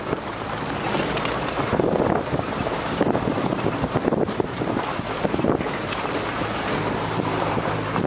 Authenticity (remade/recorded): remade